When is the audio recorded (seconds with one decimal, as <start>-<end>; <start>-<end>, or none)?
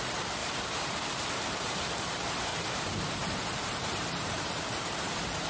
0.0-0.4; 1.7-2.5